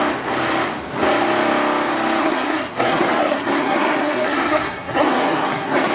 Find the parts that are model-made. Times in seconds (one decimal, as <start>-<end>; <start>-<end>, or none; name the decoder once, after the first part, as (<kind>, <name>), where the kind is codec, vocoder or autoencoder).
2.2-5.9 (codec, SNAC)